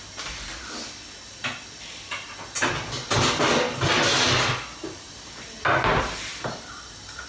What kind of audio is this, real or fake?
real